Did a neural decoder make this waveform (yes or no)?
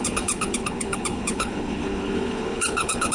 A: yes